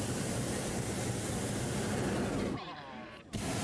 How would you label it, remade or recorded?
recorded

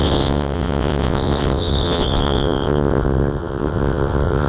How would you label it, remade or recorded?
remade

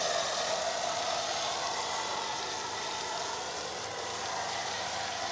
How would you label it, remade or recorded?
recorded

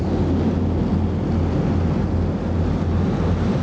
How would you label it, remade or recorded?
recorded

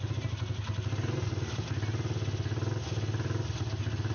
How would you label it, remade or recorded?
recorded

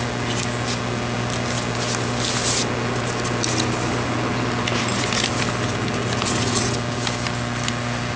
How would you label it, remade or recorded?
recorded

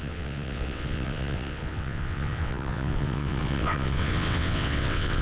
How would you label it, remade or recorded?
remade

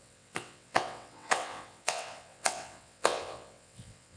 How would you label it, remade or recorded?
remade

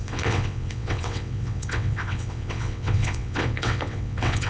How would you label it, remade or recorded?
remade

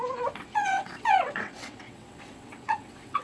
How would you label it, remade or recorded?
remade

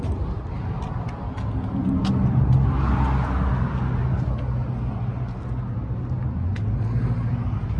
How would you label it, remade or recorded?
recorded